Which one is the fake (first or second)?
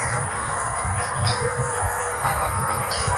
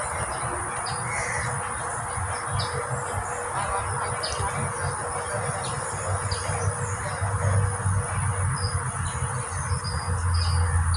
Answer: first